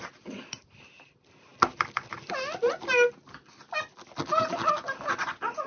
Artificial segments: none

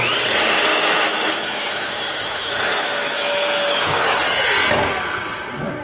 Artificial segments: 0.7-4.2 (autoencoder, DAC-VAE)

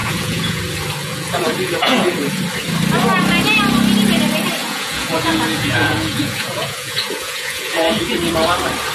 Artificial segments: 0.0-0.6 (vocoder, Vocos); 1.0-2.4; 4.6-8.1